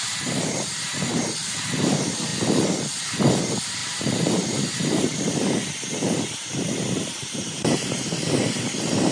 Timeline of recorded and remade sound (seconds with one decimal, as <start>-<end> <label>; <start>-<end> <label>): 0.0-2.3 remade; 2.3-3.4 recorded; 3.4-9.1 remade